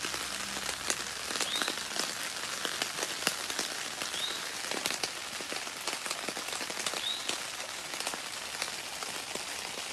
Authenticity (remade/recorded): recorded